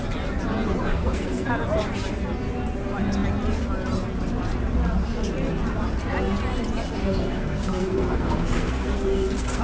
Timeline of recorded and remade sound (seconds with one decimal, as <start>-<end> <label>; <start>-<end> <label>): 0.0-0.8 recorded; 0.8-1.5 remade; 1.5-7.0 recorded; 7.0-9.6 remade